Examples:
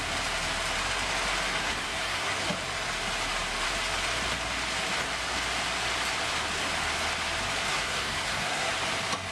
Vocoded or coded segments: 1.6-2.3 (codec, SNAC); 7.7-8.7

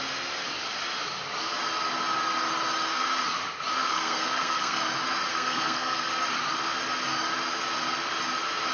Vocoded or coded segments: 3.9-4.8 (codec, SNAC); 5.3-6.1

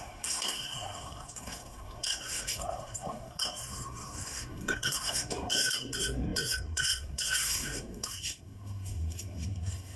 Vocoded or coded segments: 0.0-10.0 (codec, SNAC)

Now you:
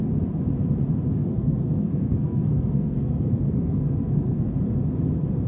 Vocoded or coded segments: 1.2-4.5 (codec, SNAC)

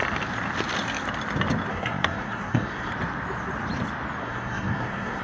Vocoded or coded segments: 1.7-2.9 (codec, SNAC); 4.2-5.2

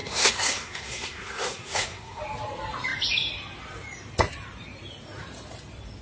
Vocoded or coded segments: 0.0-2.2 (codec, SNAC)

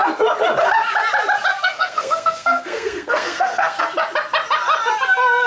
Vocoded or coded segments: 1.5-3.8 (codec, SNAC)

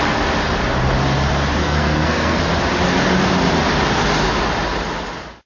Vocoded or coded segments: 1.6-2.4 (codec, SNAC)